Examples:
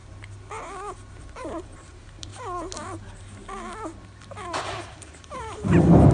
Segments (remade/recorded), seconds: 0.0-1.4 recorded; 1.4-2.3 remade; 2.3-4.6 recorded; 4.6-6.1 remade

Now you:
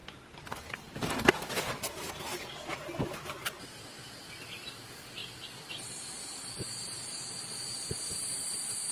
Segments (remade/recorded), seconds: 0.0-2.1 remade; 2.1-3.4 recorded; 3.4-4.0 remade; 4.0-5.2 recorded; 5.2-6.0 remade; 6.0-8.9 recorded